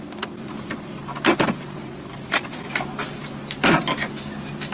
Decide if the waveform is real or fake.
real